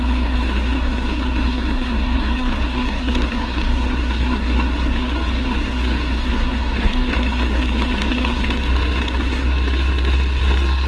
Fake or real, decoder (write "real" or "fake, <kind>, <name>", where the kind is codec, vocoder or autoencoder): fake, codec, SNAC